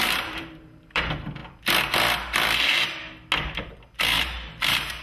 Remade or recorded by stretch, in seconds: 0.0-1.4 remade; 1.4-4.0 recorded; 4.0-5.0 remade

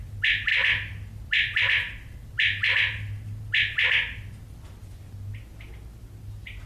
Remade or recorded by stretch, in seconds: 0.0-6.7 recorded

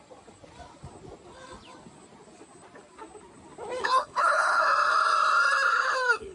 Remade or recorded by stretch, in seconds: 0.0-3.8 recorded; 3.8-4.6 remade; 4.6-5.7 recorded; 5.7-6.3 remade

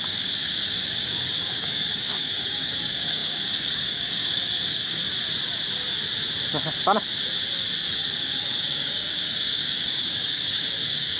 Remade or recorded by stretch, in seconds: 0.0-5.0 remade; 5.0-7.9 recorded; 7.9-11.2 remade

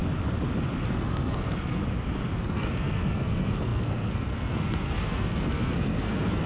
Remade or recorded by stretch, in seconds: 0.0-0.9 recorded; 0.9-1.8 remade; 1.8-2.4 recorded; 2.4-6.5 remade

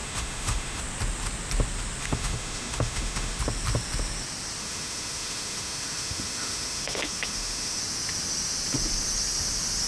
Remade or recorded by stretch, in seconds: 0.0-0.8 remade; 0.8-2.0 recorded; 2.0-3.4 remade; 3.4-4.6 recorded; 4.6-7.8 remade; 7.8-9.9 recorded